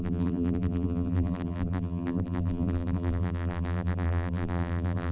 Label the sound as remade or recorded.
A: remade